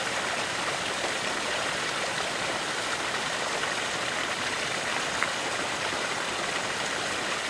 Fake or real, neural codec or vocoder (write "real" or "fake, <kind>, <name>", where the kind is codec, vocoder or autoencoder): fake, vocoder, BigVGAN v2